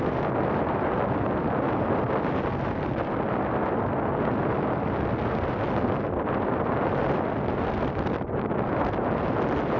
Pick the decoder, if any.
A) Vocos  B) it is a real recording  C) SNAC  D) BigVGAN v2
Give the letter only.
B